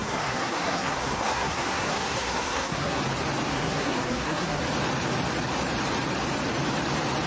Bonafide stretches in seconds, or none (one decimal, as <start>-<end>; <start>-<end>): 3.0-3.5; 4.6-7.3